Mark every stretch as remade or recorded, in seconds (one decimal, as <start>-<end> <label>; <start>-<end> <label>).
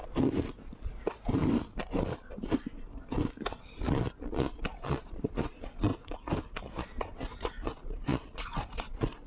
0.0-3.5 recorded; 3.5-5.9 remade; 5.9-6.6 recorded; 6.6-9.3 remade